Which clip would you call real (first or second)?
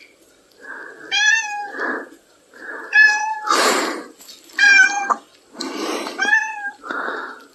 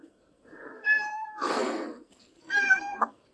first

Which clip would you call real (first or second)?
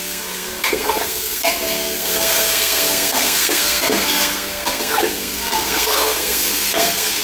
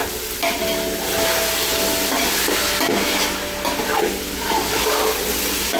second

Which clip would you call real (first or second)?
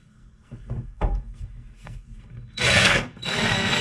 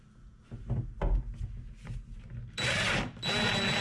second